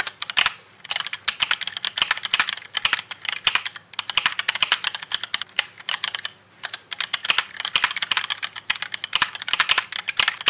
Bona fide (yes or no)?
yes